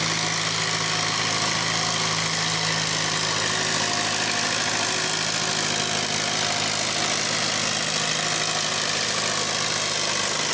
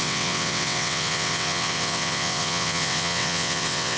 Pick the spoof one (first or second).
second